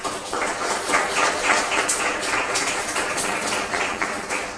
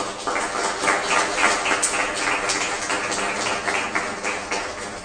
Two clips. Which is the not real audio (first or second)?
first